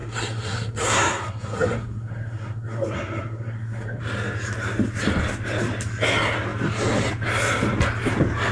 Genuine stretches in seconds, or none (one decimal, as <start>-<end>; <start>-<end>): 4.0-8.5